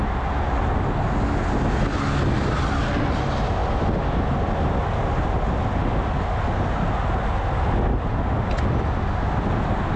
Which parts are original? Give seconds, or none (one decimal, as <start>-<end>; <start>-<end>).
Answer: 0.0-10.0